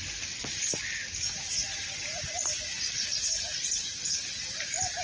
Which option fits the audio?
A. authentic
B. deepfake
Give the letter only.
A